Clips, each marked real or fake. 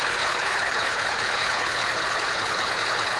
fake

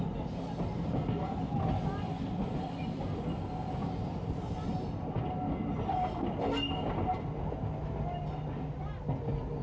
real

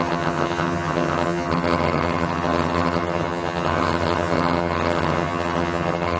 fake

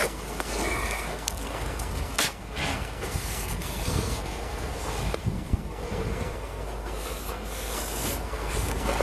fake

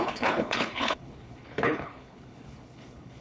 fake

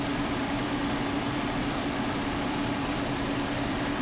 fake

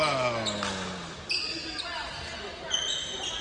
real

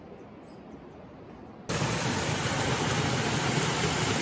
real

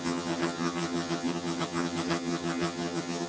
fake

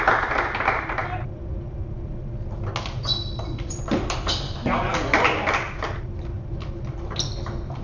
real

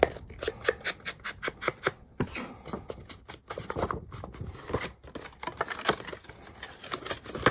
real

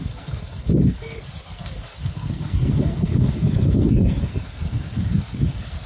fake